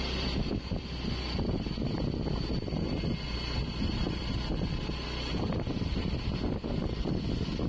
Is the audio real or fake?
real